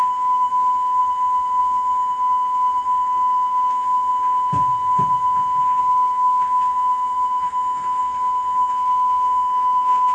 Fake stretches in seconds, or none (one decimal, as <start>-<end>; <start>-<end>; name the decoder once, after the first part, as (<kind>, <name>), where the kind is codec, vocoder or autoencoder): 0.0-1.0 (autoencoder, DAC-VAE); 1.6-4.1; 5.8-10.1